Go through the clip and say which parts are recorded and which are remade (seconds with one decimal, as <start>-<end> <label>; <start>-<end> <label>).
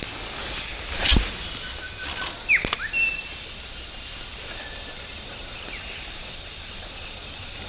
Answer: 0.0-7.7 recorded